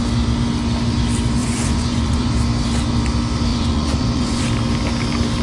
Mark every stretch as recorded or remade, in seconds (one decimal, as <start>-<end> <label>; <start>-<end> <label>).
0.0-1.4 recorded; 1.4-2.3 remade; 2.3-3.5 recorded; 3.5-4.4 remade; 4.4-5.4 recorded